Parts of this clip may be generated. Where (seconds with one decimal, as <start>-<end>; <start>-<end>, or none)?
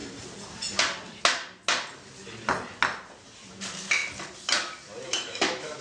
5.1-5.8